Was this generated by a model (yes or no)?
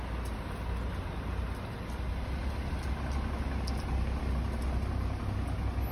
no